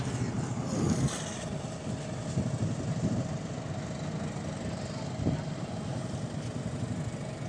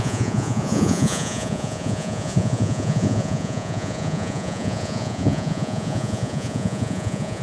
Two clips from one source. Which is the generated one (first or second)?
second